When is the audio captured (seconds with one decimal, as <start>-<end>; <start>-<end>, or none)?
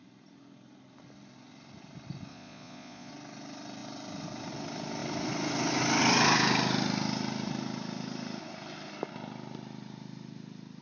0.0-2.3; 3.1-10.8